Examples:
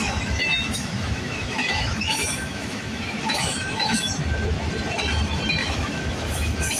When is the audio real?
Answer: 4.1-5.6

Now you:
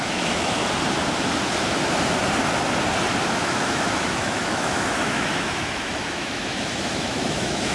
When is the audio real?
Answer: 0.6-3.3

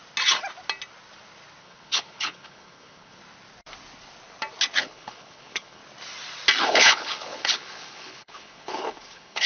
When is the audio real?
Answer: 0.0-1.6; 3.2-4.8; 5.8-6.6

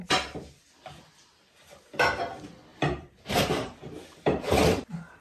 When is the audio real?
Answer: 0.0-2.7; 4.8-5.2

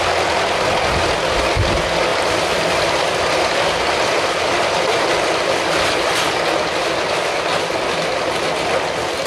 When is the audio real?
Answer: 0.0-9.3

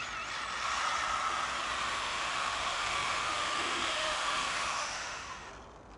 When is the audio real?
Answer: 0.0-1.9; 5.5-6.0

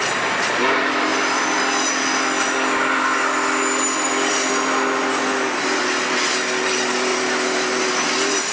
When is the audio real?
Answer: 0.0-8.5

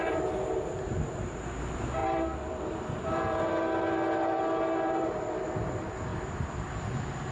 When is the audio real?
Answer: 0.0-2.0; 2.6-6.1; 6.7-7.3